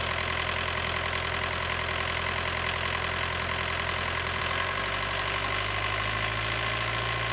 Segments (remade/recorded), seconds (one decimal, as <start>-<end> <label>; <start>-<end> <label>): 0.0-7.3 recorded